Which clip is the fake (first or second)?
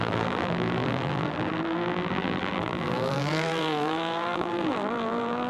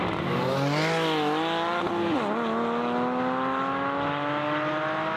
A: first